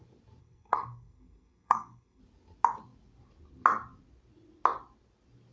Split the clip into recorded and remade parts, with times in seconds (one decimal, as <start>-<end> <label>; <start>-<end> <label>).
0.0-0.4 recorded; 0.4-2.2 remade; 2.2-5.5 recorded